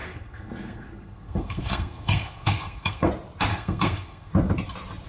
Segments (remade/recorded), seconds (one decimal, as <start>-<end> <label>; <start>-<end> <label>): 0.0-3.1 remade; 3.1-3.5 recorded; 3.5-4.3 remade; 4.3-5.1 recorded